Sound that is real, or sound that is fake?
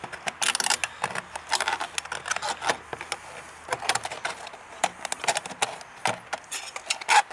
real